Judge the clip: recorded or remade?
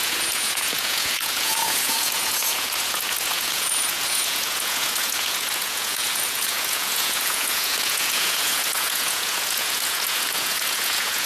remade